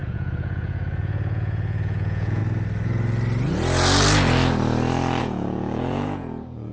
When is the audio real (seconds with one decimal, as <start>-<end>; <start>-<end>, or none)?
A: 2.4-5.2